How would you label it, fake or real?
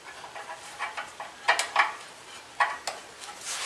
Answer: real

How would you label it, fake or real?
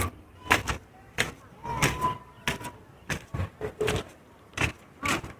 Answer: real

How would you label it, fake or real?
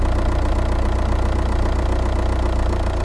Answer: real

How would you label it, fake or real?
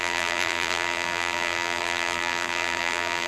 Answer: fake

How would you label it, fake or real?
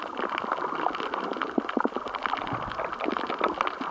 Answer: real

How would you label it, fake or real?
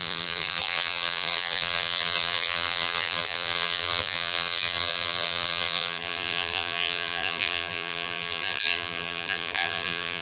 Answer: fake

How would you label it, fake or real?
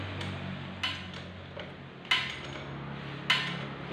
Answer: real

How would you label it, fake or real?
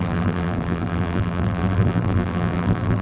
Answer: fake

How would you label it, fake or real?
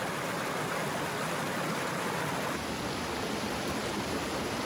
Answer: real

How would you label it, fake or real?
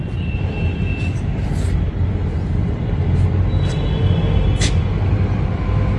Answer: real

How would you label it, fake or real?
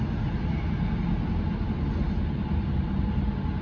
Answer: real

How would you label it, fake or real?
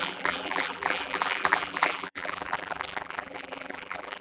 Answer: fake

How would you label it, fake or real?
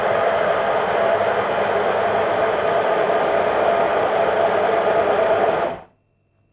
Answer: fake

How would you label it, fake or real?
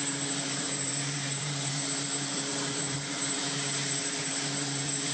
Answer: fake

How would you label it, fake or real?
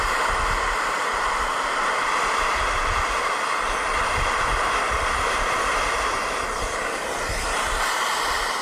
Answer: fake